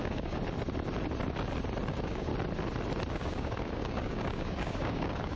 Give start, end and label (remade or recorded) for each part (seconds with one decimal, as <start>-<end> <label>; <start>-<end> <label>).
0.0-0.4 remade; 0.4-1.9 recorded; 1.9-2.3 remade; 2.3-3.1 recorded; 3.1-5.4 remade